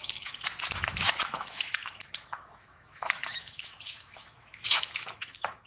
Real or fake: fake